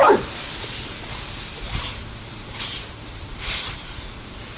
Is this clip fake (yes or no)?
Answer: yes